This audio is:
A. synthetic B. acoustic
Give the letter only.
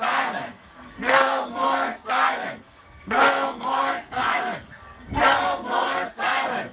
A